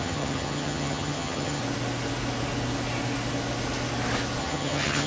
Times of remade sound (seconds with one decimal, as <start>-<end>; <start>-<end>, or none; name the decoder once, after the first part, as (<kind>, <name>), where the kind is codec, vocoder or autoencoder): 0.0-1.6 (vocoder, HiFi-GAN); 4.4-5.1